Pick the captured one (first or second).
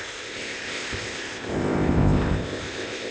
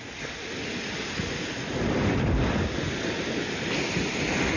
second